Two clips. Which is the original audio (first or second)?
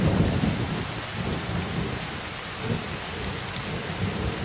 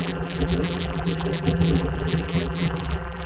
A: first